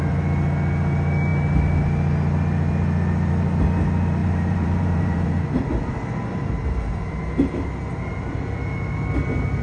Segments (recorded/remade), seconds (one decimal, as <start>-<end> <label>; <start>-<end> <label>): 0.0-4.2 recorded; 4.2-5.4 remade; 5.4-9.6 recorded